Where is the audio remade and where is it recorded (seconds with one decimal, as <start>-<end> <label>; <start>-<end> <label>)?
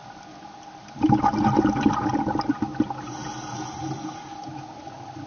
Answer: 0.0-5.3 recorded